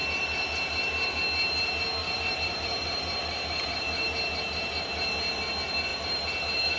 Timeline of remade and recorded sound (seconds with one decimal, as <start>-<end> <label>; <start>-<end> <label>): 0.0-1.2 remade; 1.2-2.0 recorded; 2.0-5.5 remade; 5.5-5.9 recorded; 5.9-6.8 remade